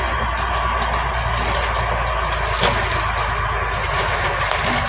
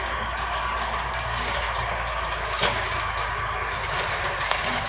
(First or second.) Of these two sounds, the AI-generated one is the second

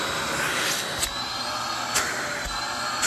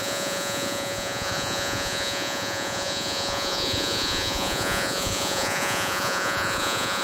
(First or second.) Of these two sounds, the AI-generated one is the second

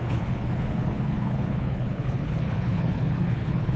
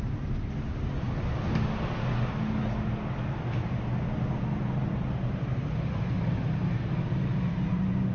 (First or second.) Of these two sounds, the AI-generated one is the first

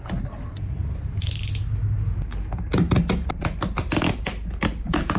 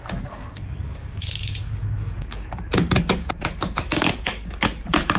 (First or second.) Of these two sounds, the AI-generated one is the second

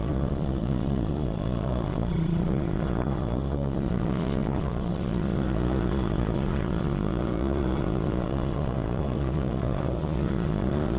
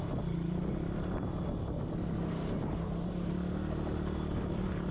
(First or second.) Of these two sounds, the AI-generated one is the first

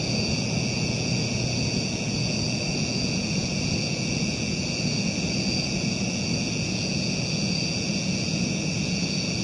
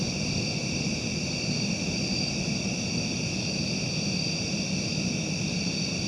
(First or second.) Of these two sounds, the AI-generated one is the first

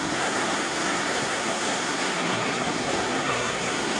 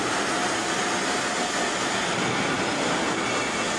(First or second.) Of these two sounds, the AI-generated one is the first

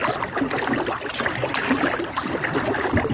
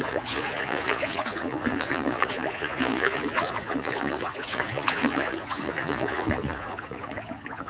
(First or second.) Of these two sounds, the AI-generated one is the second